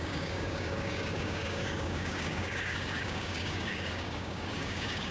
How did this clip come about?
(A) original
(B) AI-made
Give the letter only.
B